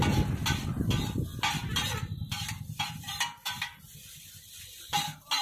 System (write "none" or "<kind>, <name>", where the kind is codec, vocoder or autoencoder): none